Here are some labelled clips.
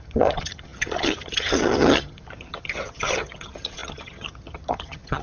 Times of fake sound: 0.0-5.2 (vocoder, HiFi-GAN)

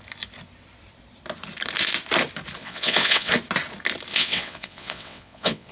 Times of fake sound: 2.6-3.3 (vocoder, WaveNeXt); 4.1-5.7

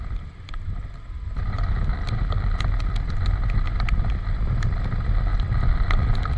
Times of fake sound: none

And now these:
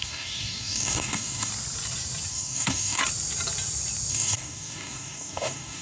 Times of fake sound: 0.0-1.5 (codec, DAC); 2.3-3.0; 4.1-5.8

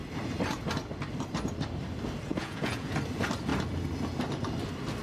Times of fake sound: 2.3-2.9 (vocoder, Vocos)